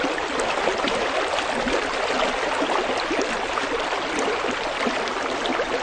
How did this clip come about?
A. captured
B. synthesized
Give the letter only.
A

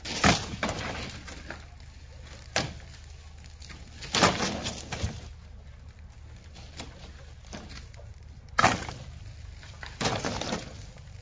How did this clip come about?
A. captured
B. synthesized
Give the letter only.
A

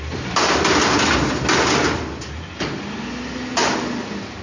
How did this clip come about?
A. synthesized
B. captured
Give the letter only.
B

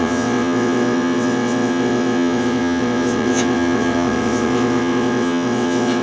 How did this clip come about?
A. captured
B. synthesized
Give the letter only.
B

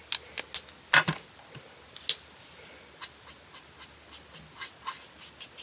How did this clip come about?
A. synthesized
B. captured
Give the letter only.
B